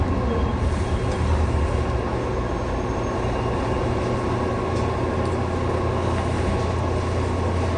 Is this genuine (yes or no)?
yes